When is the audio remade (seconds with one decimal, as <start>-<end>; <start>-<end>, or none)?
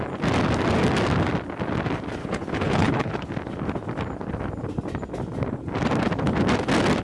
2.2-3.3